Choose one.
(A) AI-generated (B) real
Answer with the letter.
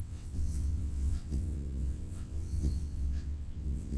A